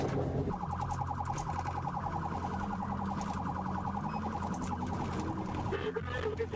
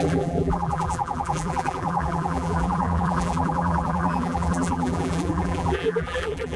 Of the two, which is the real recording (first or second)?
first